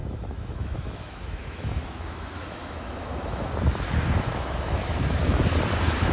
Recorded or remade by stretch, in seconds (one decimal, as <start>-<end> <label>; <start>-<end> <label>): 0.0-3.5 remade; 3.5-4.3 recorded; 4.3-5.2 remade; 5.2-6.1 recorded

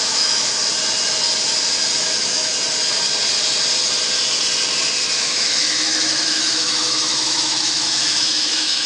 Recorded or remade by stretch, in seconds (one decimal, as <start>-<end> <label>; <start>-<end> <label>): 0.0-0.6 remade; 0.6-2.0 recorded; 2.0-2.5 remade; 2.5-5.2 recorded; 5.2-8.9 remade

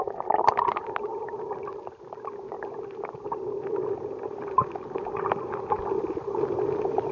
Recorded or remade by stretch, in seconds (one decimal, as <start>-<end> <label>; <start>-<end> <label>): 0.0-7.1 recorded

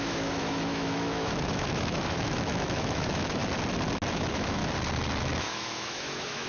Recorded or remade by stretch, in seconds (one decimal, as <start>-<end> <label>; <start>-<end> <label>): 0.0-3.4 remade; 3.4-4.1 recorded; 4.1-4.6 remade; 4.6-5.2 recorded; 5.2-6.5 remade